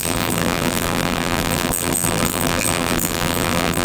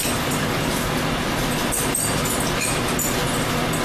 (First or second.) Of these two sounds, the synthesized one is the first